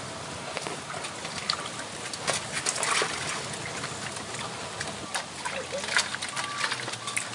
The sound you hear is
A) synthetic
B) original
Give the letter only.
B